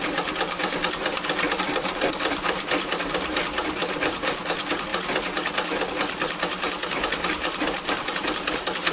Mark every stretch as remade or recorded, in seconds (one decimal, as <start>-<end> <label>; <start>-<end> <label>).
0.0-4.9 remade; 4.9-5.9 recorded; 5.9-8.9 remade